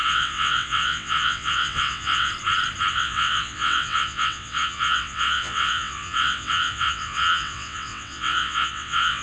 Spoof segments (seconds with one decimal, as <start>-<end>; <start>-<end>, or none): 0.0-2.3; 2.9-9.2